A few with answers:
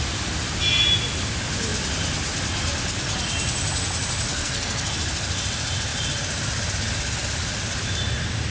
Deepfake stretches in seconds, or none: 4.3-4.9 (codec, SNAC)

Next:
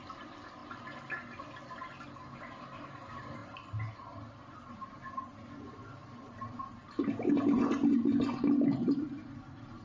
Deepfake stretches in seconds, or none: 0.6-2.9 (vocoder, BigVGAN v2); 6.0-6.9

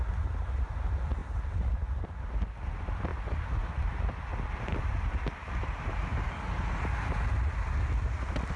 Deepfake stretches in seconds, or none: none

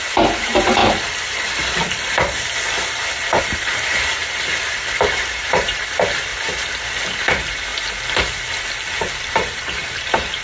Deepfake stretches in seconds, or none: 0.0-0.8 (vocoder, BigVGAN v2); 3.4-4.2; 5.2-6.3; 7.2-7.7; 9.2-10.4

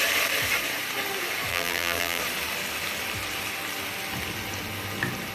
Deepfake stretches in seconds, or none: 1.5-2.2 (vocoder, BigVGAN v2)

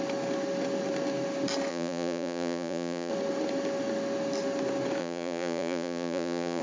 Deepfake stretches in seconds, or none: 1.7-3.1 (vocoder, Vocos); 5.0-6.6

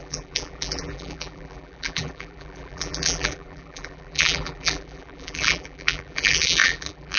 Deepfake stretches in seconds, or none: 0.0-7.2 (vocoder, BigVGAN v2)

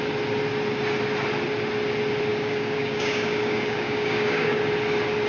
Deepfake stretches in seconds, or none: 2.3-4.6 (codec, DAC)